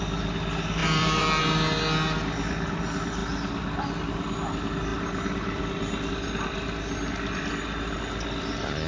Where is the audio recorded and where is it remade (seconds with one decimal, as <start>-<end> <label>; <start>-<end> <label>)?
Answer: 0.0-0.8 recorded; 0.8-1.4 remade; 1.4-8.9 recorded